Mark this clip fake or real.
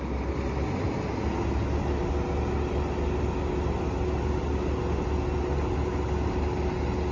real